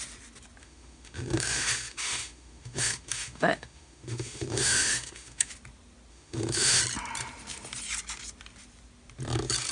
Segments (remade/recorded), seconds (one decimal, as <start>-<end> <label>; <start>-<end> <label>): 0.0-0.6 recorded; 0.6-5.5 remade; 5.5-6.1 recorded; 6.1-6.8 remade; 6.8-9.7 recorded